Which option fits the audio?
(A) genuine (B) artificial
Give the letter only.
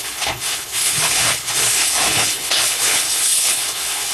B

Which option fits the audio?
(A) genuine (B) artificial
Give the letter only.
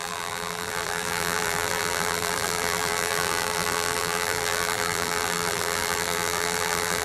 B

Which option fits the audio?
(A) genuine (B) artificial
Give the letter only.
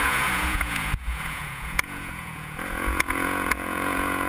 B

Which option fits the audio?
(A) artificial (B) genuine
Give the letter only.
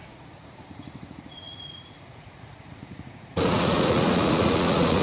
A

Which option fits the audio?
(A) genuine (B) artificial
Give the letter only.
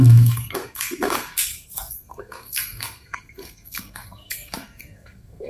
B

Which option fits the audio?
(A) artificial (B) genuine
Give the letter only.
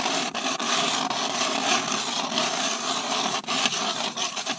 B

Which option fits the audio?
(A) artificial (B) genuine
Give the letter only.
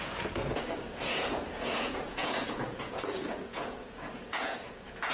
A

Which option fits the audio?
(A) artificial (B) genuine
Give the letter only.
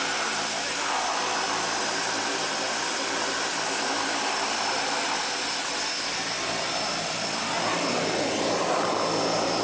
B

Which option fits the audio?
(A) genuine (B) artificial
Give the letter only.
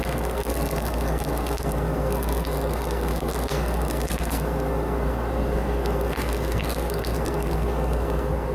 B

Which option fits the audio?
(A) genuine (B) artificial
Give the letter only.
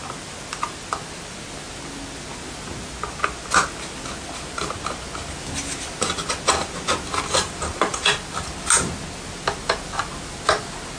A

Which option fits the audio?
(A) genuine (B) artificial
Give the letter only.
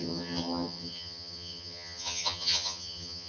B